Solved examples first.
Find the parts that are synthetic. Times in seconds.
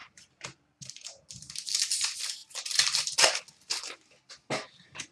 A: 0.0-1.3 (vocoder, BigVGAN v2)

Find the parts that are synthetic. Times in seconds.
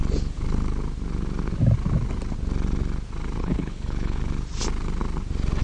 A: 3.4-4.2 (codec, HILCodec)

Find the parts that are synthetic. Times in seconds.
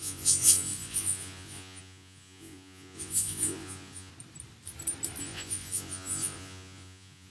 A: 0.0-4.1 (vocoder, Vocos); 5.2-7.3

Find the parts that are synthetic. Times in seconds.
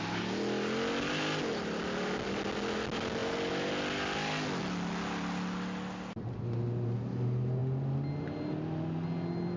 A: 3.2-3.7 (vocoder, BigVGAN v2)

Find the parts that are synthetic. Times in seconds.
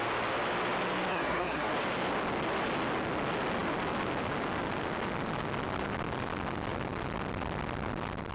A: 1.1-1.7 (codec, SNAC)